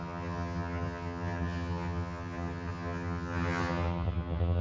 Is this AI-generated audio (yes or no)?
yes